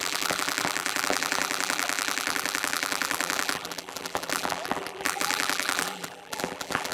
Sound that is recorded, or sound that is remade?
remade